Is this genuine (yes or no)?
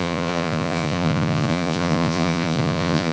no